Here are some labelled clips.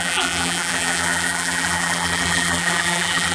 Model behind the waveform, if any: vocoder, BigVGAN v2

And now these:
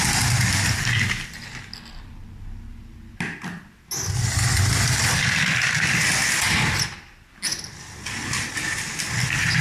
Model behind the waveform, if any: none